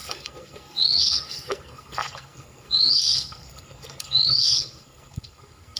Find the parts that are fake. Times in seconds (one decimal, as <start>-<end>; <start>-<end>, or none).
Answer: 0.0-5.8

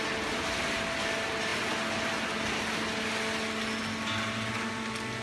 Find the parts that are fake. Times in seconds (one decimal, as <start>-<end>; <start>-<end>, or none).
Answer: none

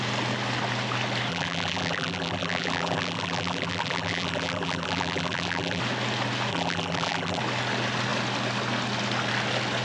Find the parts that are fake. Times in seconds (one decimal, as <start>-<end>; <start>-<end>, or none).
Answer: 1.3-5.8; 6.5-7.4

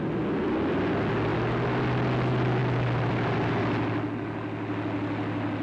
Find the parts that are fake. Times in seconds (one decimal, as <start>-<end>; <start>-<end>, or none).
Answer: none

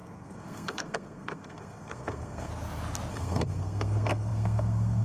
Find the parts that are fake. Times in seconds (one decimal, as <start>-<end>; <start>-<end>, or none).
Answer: 0.0-2.5; 3.1-5.0

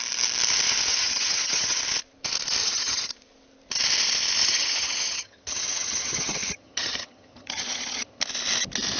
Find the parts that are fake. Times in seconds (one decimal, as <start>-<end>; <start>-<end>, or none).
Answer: 0.9-1.8; 2.6-3.1; 4.4-8.2

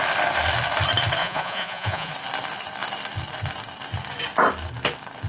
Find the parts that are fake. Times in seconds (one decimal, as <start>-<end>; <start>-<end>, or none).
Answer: 1.2-2.1

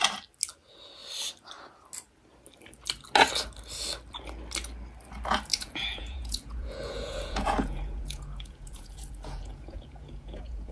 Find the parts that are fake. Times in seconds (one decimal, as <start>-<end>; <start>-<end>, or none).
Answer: 5.5-10.7